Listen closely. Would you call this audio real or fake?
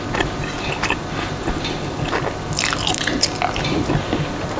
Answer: real